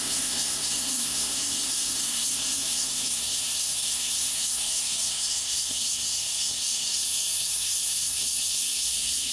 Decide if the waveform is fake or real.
fake